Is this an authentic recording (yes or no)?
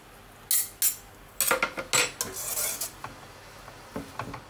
yes